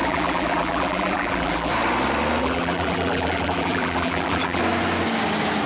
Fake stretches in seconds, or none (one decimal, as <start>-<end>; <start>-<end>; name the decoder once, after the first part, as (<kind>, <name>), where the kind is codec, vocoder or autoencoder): 0.0-1.7 (vocoder, BigVGAN v2); 2.4-4.6